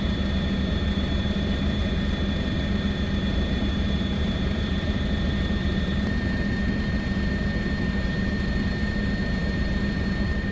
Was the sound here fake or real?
fake